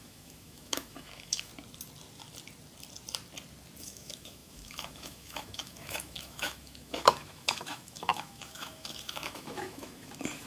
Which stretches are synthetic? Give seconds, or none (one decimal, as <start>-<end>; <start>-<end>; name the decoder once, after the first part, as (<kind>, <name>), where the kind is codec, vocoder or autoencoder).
0.0-1.5 (autoencoder, DAC-VAE); 3.8-10.5